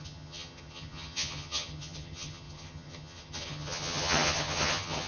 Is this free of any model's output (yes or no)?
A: no